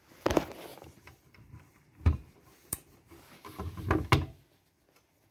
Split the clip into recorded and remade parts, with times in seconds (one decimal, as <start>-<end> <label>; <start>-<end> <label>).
0.0-0.7 recorded; 0.7-3.9 remade; 3.9-5.3 recorded